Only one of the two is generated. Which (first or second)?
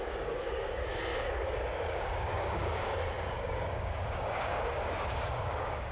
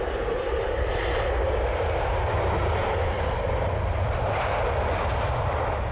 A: first